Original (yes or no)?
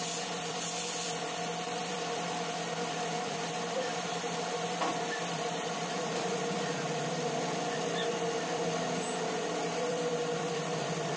no